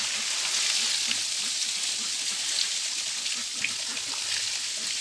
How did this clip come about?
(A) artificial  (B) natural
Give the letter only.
B